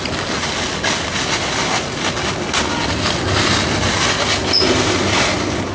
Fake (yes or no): no